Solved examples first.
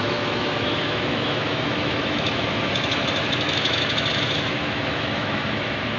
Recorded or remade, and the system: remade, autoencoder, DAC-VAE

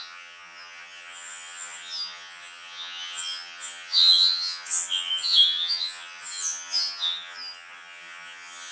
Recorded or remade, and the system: remade, vocoder, HiFi-GAN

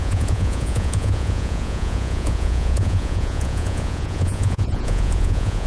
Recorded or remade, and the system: remade, vocoder, Vocos